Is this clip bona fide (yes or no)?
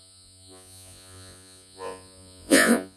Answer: no